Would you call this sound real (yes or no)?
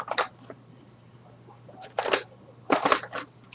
yes